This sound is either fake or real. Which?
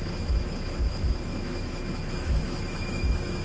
fake